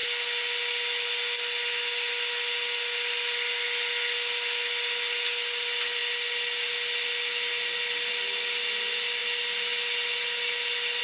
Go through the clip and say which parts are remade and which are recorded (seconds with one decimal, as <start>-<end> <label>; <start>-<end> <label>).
0.0-11.0 recorded